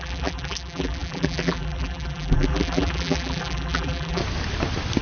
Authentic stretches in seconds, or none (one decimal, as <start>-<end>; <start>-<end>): 4.2-5.0